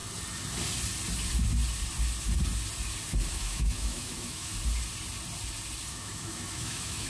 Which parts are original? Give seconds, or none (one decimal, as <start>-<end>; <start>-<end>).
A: 0.0-3.3; 4.5-5.9